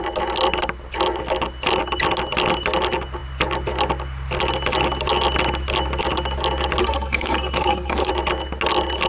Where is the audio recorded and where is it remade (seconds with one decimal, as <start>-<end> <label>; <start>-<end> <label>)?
0.0-6.8 recorded; 6.8-8.1 remade; 8.1-9.1 recorded